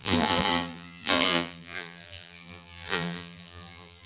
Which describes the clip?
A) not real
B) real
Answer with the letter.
A